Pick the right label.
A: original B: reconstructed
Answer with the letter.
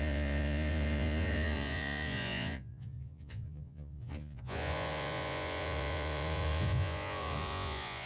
B